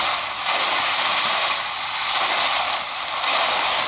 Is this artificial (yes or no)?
no